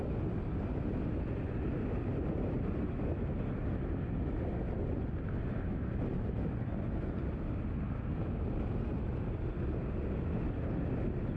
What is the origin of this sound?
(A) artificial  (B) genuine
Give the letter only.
B